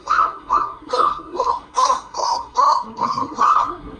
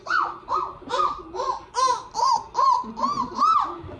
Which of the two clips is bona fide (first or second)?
second